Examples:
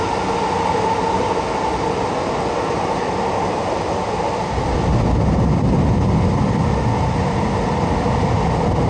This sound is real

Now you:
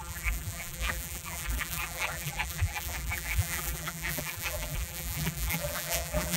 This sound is fake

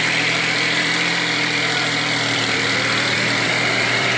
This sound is fake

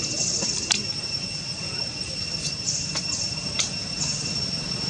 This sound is fake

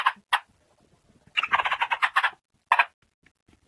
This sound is real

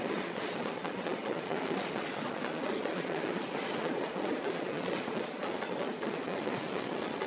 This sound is fake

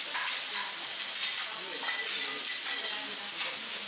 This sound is real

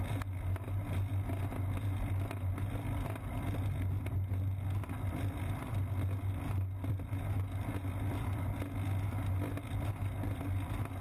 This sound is real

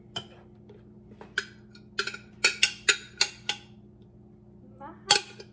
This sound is real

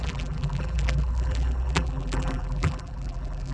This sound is fake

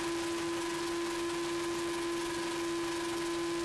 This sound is real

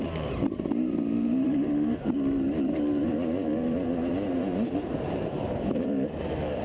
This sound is fake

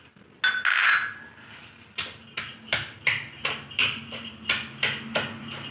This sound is real